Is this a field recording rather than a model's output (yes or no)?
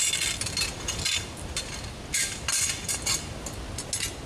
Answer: yes